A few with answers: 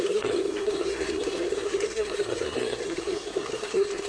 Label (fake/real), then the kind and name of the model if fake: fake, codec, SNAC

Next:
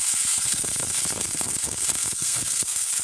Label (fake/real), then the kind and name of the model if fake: fake, codec, SNAC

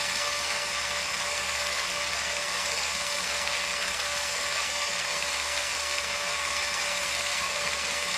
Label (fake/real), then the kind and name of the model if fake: fake, codec, SNAC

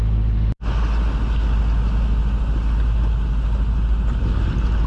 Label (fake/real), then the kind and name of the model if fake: real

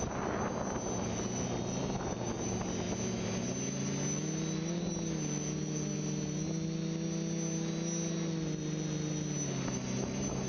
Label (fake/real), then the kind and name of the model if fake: real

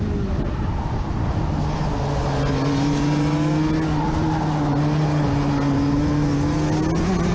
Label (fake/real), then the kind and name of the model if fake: real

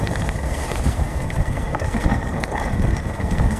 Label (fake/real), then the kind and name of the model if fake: fake, codec, SNAC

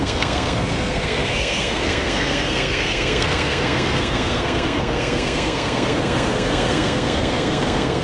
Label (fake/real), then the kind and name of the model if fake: fake, codec, SNAC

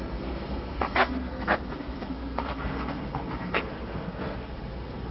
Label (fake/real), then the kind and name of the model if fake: fake, codec, SNAC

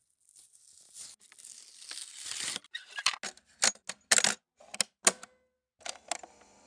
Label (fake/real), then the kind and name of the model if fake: real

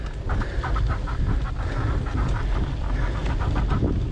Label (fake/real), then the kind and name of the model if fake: real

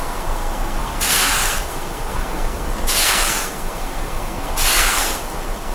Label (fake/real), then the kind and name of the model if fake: fake, codec, SNAC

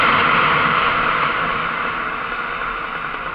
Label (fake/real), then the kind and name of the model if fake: real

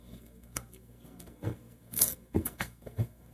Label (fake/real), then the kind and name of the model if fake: fake, codec, SNAC